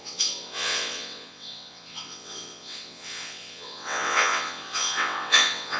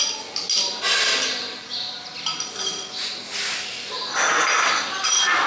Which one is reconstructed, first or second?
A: first